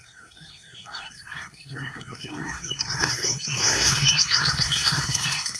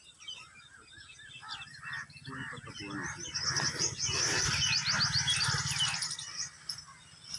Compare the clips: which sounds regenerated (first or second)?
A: first